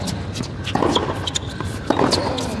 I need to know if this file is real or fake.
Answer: real